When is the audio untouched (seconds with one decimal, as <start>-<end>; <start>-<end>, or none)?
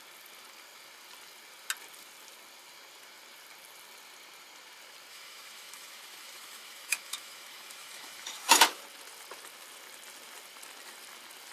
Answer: 0.0-5.1; 8.8-11.5